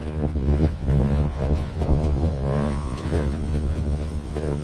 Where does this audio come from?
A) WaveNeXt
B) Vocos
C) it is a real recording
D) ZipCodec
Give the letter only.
B